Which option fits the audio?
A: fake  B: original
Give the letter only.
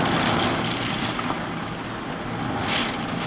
B